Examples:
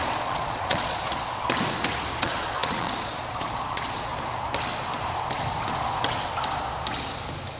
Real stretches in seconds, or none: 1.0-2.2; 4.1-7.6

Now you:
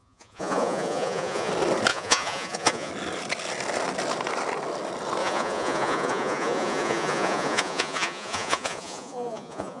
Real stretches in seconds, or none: 1.5-1.9; 2.9-5.2

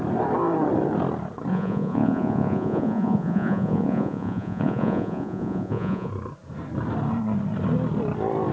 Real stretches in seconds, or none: 0.0-1.5; 6.1-8.5

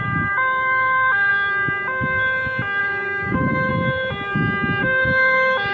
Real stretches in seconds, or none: 1.3-2.8; 3.7-4.8

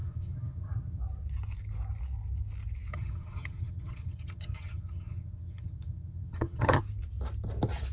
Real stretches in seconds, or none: 1.0-2.9; 6.8-7.9